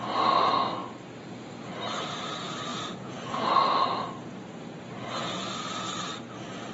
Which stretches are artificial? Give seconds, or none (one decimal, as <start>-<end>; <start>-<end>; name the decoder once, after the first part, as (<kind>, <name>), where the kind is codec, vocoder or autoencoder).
2.7-3.5 (vocoder, Vocos)